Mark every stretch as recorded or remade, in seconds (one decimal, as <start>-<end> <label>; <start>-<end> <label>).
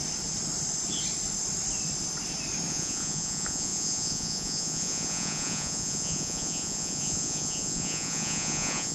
0.0-2.7 recorded; 2.7-8.9 remade